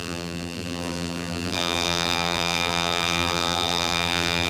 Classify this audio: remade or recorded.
remade